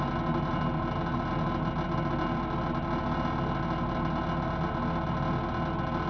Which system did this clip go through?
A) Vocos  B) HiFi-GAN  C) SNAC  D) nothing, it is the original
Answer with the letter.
D